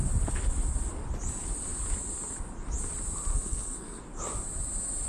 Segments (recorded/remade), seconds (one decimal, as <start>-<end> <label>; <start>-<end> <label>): 0.0-3.3 recorded; 3.3-4.0 remade; 4.0-5.1 recorded